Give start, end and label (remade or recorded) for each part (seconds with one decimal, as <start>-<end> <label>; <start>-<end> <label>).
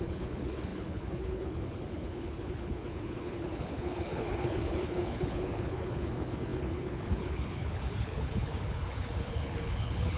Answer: 0.0-10.2 remade